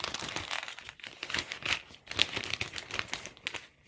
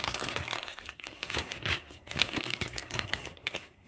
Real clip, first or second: first